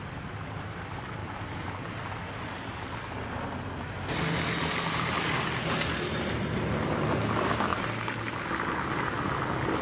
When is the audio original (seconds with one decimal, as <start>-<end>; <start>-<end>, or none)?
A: 0.0-9.8